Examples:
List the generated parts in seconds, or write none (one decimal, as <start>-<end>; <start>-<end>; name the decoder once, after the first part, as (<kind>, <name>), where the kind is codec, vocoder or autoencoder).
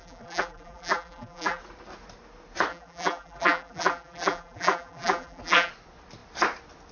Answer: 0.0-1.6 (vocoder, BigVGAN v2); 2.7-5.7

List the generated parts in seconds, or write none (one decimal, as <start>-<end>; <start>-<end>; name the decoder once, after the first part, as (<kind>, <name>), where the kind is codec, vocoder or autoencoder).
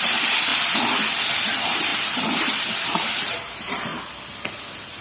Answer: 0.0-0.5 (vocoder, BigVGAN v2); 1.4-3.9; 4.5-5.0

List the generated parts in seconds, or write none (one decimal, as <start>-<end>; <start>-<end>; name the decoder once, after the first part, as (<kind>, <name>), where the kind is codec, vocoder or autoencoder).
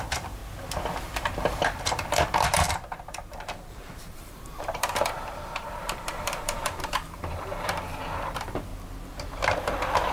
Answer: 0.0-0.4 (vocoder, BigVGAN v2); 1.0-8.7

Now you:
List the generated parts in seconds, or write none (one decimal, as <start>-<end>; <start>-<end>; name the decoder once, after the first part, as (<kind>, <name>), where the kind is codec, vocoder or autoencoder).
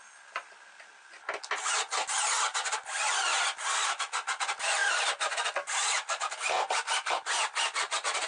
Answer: 2.5-3.1 (vocoder, BigVGAN v2); 4.8-8.3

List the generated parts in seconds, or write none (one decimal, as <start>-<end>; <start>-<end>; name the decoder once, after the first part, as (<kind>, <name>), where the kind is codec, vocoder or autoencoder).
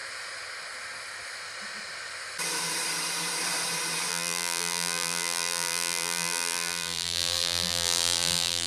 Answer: 4.1-8.7 (vocoder, BigVGAN v2)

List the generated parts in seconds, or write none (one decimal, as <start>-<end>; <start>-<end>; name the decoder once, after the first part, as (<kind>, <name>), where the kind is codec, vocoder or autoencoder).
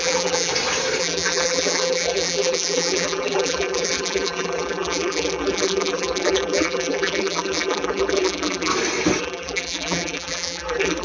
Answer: 0.0-0.5 (vocoder, BigVGAN v2); 1.0-8.7; 9.2-11.0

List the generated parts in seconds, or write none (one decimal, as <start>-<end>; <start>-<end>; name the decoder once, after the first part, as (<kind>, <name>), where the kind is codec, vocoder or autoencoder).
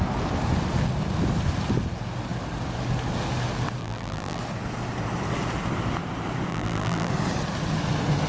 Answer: 3.8-4.4 (vocoder, BigVGAN v2); 6.5-7.1